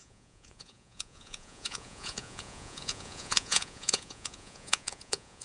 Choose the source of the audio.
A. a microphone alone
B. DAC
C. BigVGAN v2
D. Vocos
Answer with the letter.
D